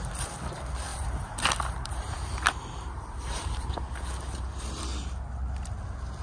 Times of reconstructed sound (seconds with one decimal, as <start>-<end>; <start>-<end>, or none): 0.9-3.8